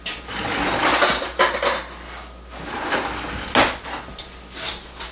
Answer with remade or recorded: recorded